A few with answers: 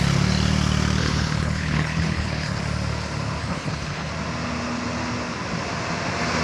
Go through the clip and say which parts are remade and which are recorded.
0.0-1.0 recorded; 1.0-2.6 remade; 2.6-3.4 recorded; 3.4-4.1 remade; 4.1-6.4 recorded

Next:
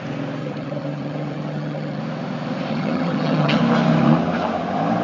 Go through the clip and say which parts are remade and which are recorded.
0.0-0.4 recorded; 0.4-2.0 remade; 2.0-2.7 recorded; 2.7-3.6 remade; 3.6-5.0 recorded

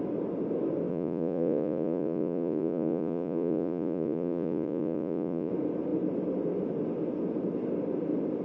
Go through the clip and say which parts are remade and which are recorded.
0.0-0.9 recorded; 0.9-5.5 remade; 5.5-8.4 recorded

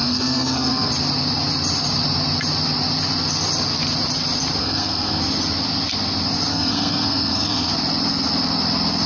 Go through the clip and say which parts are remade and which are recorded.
0.0-0.9 remade; 0.9-4.6 recorded; 4.6-5.2 remade; 5.2-6.5 recorded; 6.5-7.7 remade; 7.7-9.1 recorded

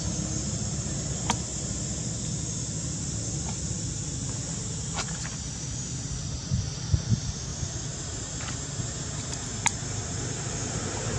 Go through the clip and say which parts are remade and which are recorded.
0.0-4.7 recorded; 4.7-5.3 remade; 5.3-7.5 recorded; 7.5-11.2 remade